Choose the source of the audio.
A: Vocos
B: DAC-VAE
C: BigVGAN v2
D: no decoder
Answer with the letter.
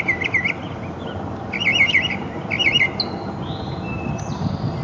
D